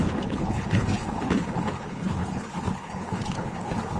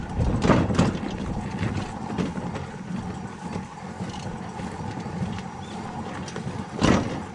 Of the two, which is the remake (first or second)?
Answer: first